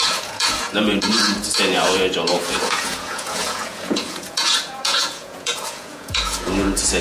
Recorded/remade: remade